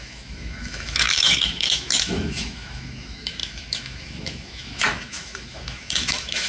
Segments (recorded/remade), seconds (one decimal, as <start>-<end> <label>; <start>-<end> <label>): 0.0-6.5 remade